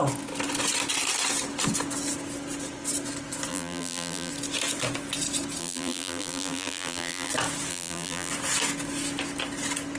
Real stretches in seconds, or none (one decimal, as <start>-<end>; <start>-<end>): 0.0-3.5; 4.3-5.6; 7.3-7.7; 8.3-10.0